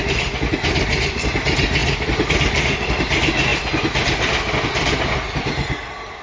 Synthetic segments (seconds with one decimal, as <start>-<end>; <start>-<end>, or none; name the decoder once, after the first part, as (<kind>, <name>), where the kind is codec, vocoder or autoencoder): none